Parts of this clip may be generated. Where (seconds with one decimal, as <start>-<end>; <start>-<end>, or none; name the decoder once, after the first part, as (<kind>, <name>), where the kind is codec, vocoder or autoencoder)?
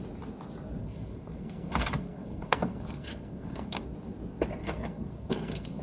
0.8-3.8 (codec, SNAC); 4.6-5.8